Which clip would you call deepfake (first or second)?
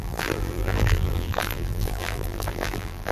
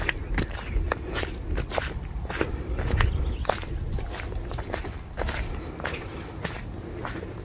first